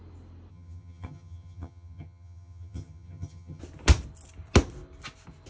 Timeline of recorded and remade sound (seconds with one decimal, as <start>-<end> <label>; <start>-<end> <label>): 0.0-0.5 recorded; 0.5-3.6 remade; 3.6-5.5 recorded